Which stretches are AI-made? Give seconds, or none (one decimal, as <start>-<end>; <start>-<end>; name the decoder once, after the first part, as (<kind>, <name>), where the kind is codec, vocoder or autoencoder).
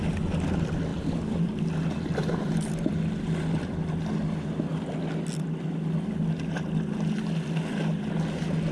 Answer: 0.9-1.6 (vocoder, BigVGAN v2); 2.2-2.9